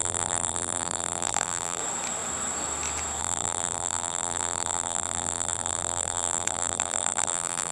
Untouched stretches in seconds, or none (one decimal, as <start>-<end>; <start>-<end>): 1.8-3.2